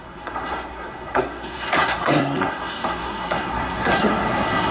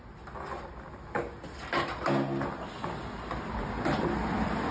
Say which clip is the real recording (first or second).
second